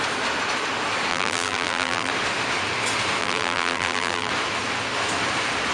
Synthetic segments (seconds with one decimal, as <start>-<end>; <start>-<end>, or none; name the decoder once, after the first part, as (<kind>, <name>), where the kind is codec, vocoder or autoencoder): 1.1-2.1 (vocoder, BigVGAN v2); 3.2-4.3

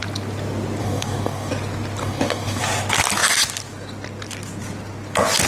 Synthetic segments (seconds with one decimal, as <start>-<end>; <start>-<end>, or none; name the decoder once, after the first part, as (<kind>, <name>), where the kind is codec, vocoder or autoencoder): 0.8-1.5 (codec, DAC); 2.0-2.6

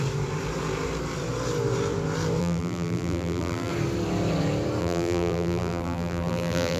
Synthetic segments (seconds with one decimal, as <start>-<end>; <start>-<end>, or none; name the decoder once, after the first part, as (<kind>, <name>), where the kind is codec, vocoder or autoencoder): 2.4-3.7 (vocoder, BigVGAN v2); 4.8-6.8

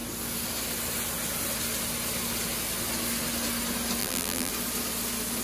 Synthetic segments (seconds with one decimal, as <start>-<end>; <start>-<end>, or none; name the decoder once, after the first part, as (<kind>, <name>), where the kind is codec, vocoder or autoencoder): 4.0-4.5 (vocoder, BigVGAN v2)

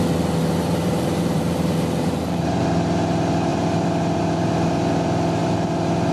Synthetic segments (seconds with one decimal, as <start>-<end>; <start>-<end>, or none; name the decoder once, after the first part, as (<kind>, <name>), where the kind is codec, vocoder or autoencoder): 0.4-2.6 (vocoder, BigVGAN v2)

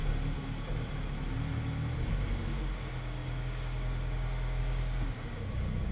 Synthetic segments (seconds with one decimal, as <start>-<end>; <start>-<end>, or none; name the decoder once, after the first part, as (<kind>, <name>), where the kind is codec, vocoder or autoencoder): 2.1-5.9 (codec, DAC)

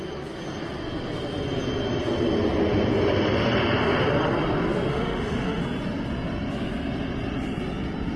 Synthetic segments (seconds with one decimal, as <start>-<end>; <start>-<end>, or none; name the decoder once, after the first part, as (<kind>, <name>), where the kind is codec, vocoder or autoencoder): 4.9-5.6 (autoencoder, DAC-VAE)